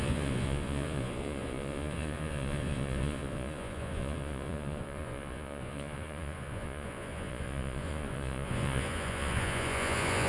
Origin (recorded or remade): remade